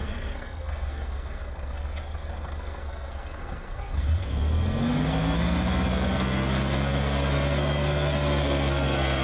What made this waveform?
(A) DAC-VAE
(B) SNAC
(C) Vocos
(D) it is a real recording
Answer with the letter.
B